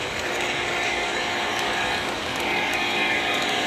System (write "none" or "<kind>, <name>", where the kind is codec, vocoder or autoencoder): codec, DAC